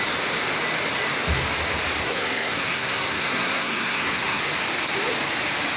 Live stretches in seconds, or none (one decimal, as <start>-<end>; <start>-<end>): 0.0-2.0; 4.4-5.8

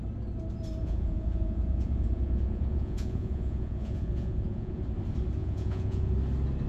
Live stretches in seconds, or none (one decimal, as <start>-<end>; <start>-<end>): 0.0-0.8; 4.8-5.4; 6.1-6.7

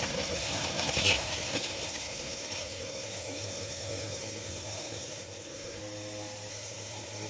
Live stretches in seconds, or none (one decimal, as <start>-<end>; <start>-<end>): 5.8-6.5

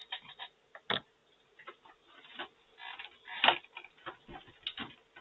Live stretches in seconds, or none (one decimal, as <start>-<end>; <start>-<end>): 0.7-1.2; 1.9-5.2